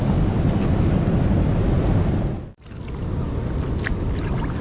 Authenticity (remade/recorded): recorded